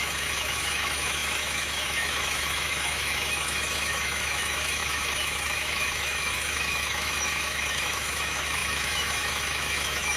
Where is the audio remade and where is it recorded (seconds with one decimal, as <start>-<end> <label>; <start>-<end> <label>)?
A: 0.0-10.2 remade